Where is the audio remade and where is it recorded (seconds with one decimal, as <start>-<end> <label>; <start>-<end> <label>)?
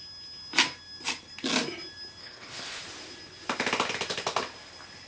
0.0-2.2 recorded; 2.2-2.8 remade; 2.8-5.1 recorded